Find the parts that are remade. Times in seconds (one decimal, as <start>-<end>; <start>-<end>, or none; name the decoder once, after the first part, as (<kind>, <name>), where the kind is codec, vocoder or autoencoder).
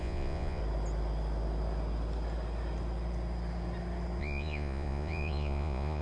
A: 0.0-0.6 (vocoder, Vocos); 4.2-6.0